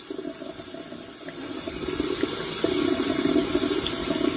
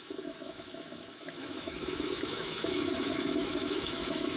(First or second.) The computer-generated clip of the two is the second